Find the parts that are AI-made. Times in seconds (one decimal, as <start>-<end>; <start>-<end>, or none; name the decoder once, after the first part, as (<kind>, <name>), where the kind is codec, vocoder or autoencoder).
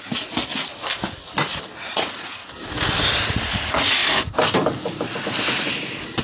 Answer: 0.0-0.5 (vocoder, Vocos); 1.8-2.4; 3.0-4.0